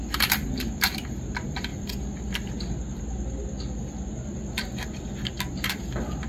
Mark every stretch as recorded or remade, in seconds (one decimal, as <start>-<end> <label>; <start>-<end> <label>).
0.0-1.7 remade; 1.7-5.5 recorded; 5.5-6.3 remade